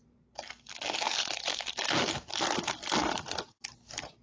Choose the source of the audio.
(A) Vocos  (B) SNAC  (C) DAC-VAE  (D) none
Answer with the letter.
D